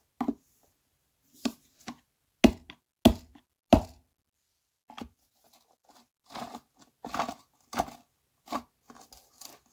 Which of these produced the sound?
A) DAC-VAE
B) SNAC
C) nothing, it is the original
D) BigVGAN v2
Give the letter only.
C